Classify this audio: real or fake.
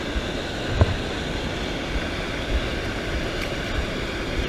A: real